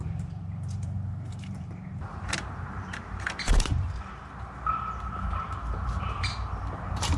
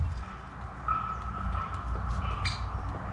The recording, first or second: second